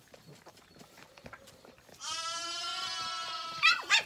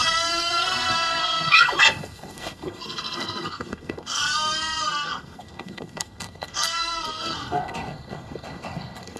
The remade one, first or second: second